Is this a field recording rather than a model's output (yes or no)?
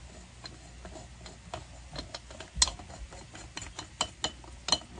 yes